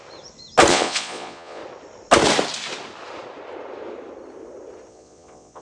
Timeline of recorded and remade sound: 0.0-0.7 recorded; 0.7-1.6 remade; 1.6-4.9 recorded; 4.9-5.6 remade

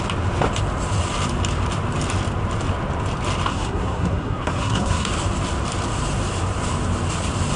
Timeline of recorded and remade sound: 0.0-3.5 recorded; 3.5-5.1 remade; 5.1-7.6 recorded

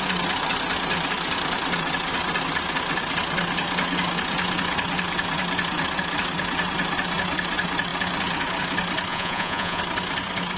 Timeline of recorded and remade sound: 0.0-9.1 recorded; 9.1-9.8 remade; 9.8-10.6 recorded